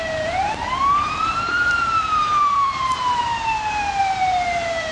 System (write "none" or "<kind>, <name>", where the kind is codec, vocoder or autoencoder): vocoder, BigVGAN v2